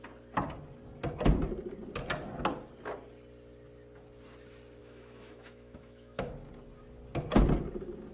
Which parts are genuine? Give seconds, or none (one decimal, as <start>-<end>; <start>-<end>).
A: 0.0-4.8; 6.3-8.1

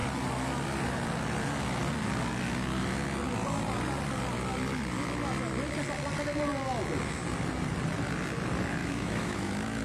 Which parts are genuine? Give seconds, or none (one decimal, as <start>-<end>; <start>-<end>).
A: 0.0-8.8

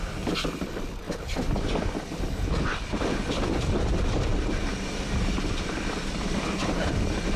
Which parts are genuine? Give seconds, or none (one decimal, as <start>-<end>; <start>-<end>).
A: 0.0-7.4

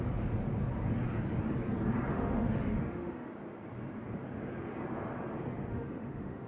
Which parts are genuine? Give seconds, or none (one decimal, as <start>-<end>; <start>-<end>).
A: 0.0-2.1; 3.3-5.7

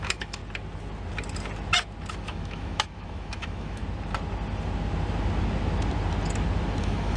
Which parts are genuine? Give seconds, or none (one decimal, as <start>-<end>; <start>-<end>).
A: 0.4-2.1; 3.8-6.8